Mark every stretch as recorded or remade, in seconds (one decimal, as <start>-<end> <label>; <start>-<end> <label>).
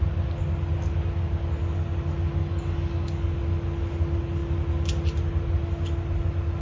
0.0-2.4 recorded; 2.4-3.4 remade; 3.4-6.6 recorded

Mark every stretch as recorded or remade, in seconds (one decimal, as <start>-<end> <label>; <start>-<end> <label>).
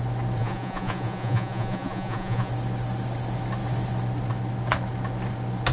0.0-0.4 recorded; 0.4-2.5 remade; 2.5-5.7 recorded